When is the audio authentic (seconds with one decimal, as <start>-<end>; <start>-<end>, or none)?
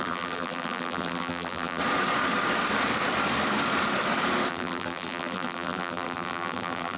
1.8-4.5